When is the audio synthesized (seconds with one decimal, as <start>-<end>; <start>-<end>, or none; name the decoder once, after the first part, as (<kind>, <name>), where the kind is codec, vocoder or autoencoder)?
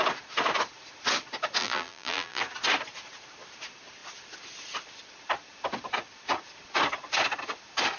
1.6-2.4 (vocoder, BigVGAN v2)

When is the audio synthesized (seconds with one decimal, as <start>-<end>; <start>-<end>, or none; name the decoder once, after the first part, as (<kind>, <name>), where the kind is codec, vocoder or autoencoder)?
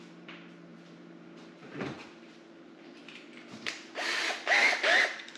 0.0-5.4 (vocoder, BigVGAN v2)